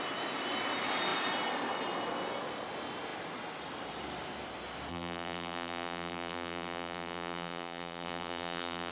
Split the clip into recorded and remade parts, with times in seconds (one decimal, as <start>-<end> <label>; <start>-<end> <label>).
0.0-4.9 recorded; 4.9-8.9 remade